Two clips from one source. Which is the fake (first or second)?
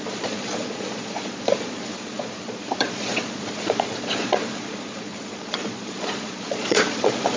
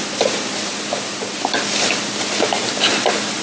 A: first